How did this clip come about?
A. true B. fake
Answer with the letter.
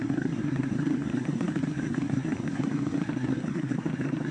B